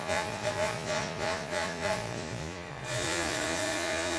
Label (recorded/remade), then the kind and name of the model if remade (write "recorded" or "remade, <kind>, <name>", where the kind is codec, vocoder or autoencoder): remade, vocoder, Vocos